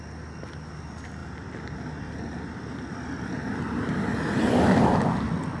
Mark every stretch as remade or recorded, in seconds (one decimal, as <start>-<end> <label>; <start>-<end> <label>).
0.0-5.6 recorded